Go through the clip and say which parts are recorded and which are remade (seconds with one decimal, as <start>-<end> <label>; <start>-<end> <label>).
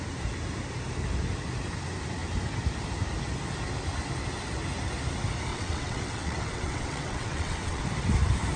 0.0-5.5 recorded; 5.5-7.8 remade; 7.8-8.6 recorded